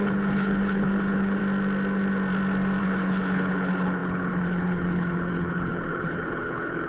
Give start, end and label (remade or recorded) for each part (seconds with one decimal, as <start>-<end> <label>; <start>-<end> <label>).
0.0-1.4 remade; 1.4-2.8 recorded; 2.8-6.9 remade